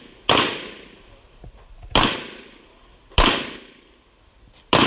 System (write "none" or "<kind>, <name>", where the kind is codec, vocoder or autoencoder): none